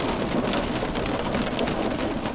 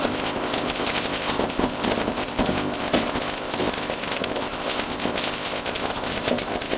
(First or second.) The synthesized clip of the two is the second